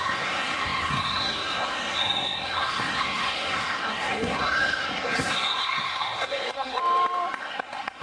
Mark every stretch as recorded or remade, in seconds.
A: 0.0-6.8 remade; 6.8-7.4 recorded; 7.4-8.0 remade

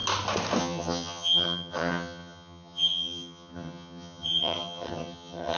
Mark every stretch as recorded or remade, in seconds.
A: 0.0-0.6 recorded; 0.6-5.6 remade

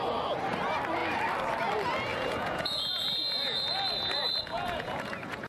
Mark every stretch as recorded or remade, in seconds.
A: 0.0-2.1 recorded; 2.1-5.5 remade

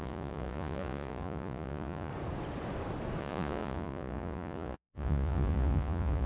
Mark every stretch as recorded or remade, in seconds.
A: 0.0-2.1 remade; 2.1-3.2 recorded; 3.2-6.3 remade